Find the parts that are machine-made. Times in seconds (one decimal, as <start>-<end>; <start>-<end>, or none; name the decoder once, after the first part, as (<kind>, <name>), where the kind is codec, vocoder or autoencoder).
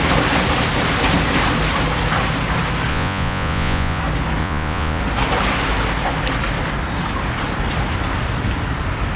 2.9-4.0 (vocoder, Vocos); 4.4-5.0